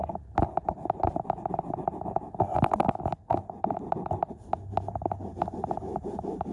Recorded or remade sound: recorded